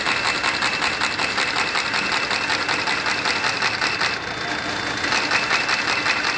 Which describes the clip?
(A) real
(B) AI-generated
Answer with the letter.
A